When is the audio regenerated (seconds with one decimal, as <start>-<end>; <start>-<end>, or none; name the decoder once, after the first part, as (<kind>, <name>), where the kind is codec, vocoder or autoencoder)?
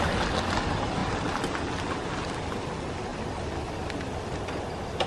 1.0-1.6 (vocoder, BigVGAN v2); 3.1-4.2